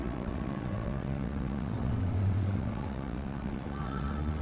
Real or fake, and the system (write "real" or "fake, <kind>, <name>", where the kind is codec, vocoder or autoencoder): fake, vocoder, WaveNeXt